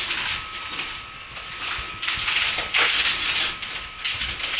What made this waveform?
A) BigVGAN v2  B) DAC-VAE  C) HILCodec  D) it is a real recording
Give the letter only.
D